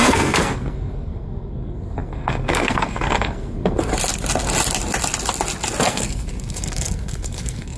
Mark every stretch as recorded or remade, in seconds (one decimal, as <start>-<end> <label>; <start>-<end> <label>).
0.0-3.9 remade; 3.9-5.8 recorded; 5.8-7.8 remade